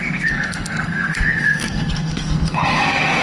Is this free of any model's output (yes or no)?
no